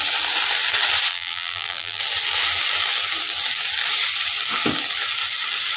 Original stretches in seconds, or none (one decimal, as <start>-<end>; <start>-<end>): 0.0-1.1; 2.0-5.8

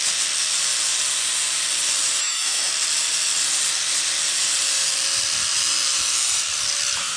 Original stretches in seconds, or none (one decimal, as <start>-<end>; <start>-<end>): 0.0-2.2; 2.7-7.2

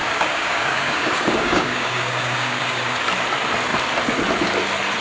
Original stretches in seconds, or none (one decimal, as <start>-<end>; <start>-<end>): 3.0-5.0